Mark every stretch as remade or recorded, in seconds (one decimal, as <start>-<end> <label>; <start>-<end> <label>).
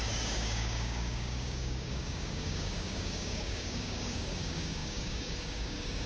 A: 0.0-6.1 remade